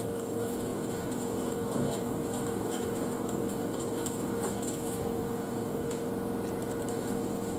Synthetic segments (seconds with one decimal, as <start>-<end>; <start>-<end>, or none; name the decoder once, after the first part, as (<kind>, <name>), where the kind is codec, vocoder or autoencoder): 0.0-6.1 (codec, DAC); 6.9-7.6